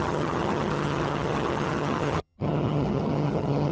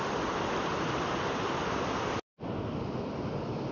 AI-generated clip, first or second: first